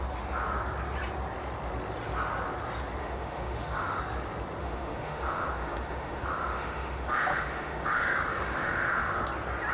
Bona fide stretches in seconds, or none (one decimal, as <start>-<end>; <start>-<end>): 0.0-3.0; 4.0-4.6; 9.2-9.7